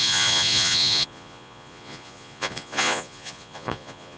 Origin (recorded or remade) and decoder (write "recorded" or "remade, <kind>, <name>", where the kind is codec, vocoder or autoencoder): remade, vocoder, Vocos